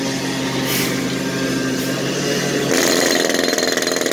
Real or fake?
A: real